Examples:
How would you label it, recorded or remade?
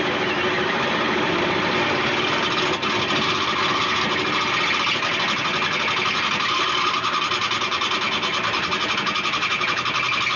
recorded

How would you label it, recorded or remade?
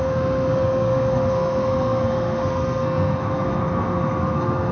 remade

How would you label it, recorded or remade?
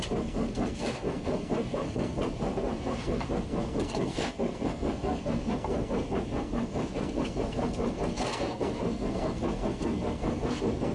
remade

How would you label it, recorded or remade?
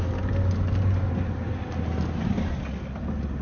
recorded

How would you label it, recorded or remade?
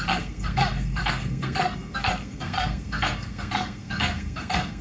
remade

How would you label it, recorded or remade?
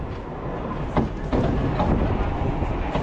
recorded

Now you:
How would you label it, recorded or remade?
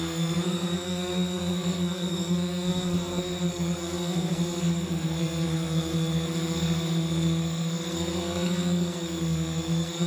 remade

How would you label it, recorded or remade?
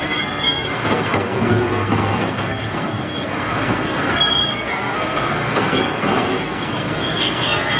remade